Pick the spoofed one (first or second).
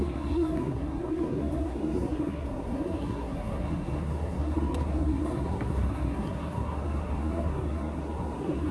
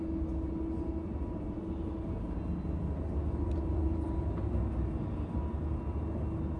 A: first